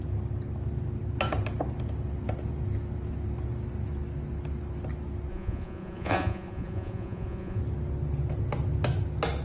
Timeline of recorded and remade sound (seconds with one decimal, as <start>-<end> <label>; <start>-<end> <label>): 0.0-5.3 recorded; 5.3-7.6 remade; 7.6-9.4 recorded